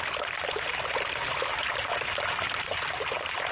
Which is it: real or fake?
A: real